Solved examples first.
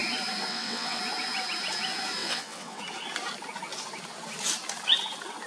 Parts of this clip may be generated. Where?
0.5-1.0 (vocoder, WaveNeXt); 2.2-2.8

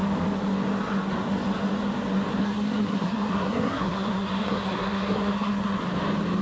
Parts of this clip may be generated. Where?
2.4-5.8 (codec, SNAC)

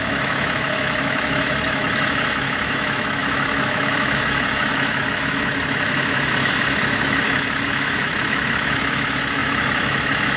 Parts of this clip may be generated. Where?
0.0-10.4 (autoencoder, DAC-VAE)

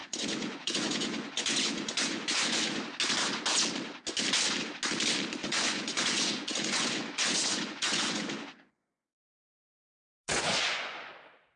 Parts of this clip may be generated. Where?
0.0-2.8 (vocoder, Vocos); 5.4-9.4; 10.3-11.1

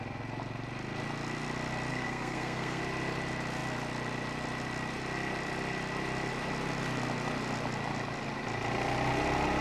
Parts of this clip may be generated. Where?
1.9-2.8 (codec, SNAC)

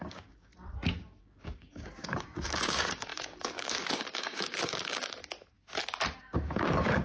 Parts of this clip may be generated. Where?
0.0-0.5 (codec, DAC); 1.2-5.2; 6.2-7.0